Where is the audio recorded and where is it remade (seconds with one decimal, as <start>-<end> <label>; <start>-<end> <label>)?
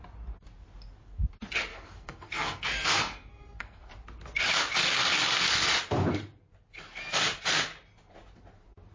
0.0-1.7 recorded; 1.7-3.9 remade; 3.9-8.9 recorded